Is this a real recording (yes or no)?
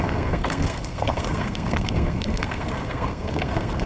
no